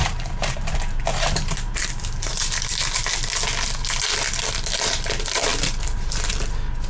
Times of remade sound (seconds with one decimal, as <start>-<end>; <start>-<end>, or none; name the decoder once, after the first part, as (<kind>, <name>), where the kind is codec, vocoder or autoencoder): 0.0-0.7 (vocoder, BigVGAN v2); 1.1-2.3